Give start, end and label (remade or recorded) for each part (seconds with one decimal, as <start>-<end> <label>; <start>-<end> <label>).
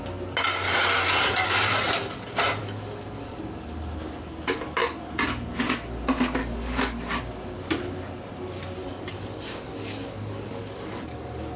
0.0-2.6 recorded; 2.6-3.4 remade; 3.4-6.4 recorded; 6.4-7.2 remade; 7.2-8.8 recorded; 8.8-11.6 remade